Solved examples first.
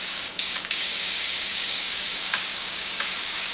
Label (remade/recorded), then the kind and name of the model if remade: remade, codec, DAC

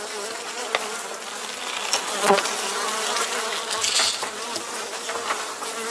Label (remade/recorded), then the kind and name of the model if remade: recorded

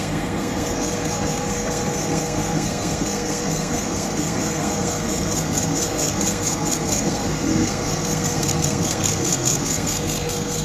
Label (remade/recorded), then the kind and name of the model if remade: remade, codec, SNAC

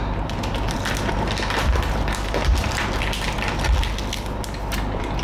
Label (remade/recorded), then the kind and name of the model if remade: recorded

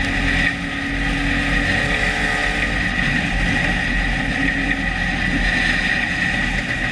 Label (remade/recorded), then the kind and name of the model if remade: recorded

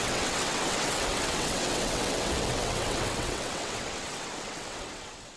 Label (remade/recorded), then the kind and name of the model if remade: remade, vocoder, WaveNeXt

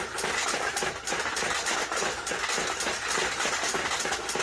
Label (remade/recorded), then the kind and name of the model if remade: recorded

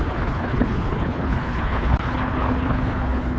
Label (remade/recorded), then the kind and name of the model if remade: remade, codec, HILCodec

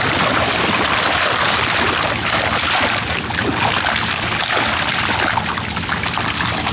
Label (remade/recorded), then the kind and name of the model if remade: recorded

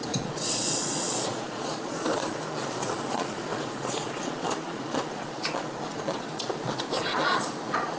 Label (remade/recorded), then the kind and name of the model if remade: remade, vocoder, Vocos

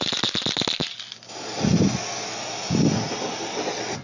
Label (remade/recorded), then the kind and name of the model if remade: recorded